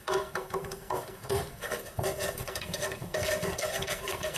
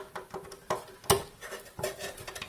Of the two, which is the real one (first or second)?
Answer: second